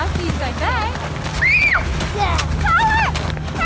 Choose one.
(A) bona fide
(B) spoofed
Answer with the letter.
A